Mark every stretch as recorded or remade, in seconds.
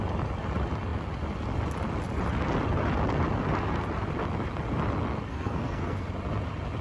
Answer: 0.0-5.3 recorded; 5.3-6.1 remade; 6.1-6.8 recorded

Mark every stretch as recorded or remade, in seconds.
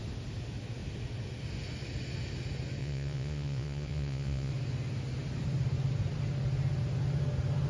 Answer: 0.0-2.8 recorded; 2.8-4.5 remade; 4.5-7.7 recorded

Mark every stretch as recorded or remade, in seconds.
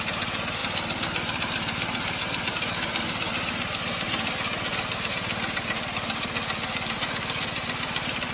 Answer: 0.0-8.3 recorded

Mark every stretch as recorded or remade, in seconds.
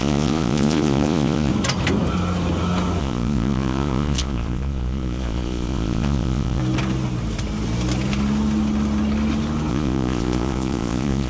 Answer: 0.0-1.5 remade; 1.5-3.0 recorded; 3.0-6.6 remade; 6.6-9.7 recorded; 9.7-11.3 remade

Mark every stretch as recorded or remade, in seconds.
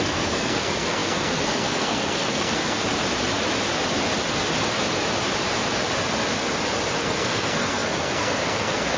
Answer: 0.0-2.9 remade; 2.9-7.0 recorded; 7.0-9.0 remade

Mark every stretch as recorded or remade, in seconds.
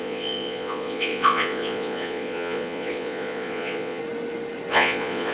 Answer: 0.0-4.0 remade; 4.0-4.7 recorded; 4.7-5.3 remade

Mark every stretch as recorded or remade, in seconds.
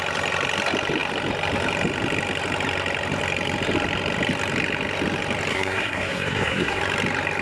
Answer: 0.0-5.5 recorded; 5.5-6.8 remade; 6.8-7.4 recorded